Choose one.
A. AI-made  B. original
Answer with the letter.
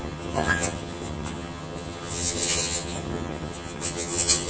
A